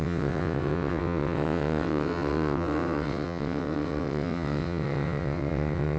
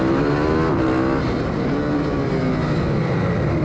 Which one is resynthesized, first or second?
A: first